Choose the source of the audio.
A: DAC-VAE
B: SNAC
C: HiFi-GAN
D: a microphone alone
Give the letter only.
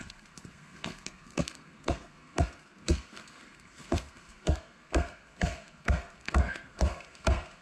B